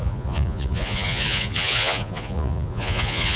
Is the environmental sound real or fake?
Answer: fake